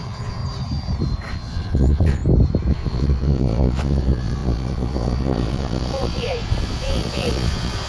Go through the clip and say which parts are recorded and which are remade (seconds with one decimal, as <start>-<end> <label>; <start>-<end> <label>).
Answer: 0.0-0.4 remade; 0.4-1.3 recorded; 1.3-2.2 remade; 2.2-2.7 recorded; 2.7-7.9 remade